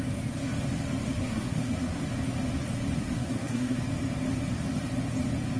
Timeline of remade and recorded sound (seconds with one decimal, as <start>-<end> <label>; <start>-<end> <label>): 0.0-1.2 recorded; 1.2-2.0 remade; 2.0-3.0 recorded; 3.0-3.8 remade; 3.8-5.6 recorded